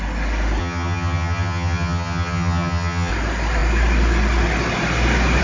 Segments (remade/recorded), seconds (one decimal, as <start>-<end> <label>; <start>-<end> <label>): 0.0-0.6 recorded; 0.6-3.1 remade; 3.1-5.4 recorded